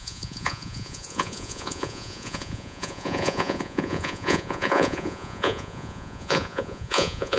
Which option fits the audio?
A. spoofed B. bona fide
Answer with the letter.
A